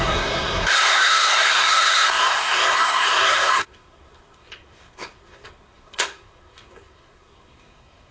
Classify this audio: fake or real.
fake